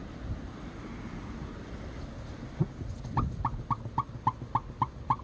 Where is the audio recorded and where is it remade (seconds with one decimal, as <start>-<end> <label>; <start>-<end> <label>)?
0.0-5.2 recorded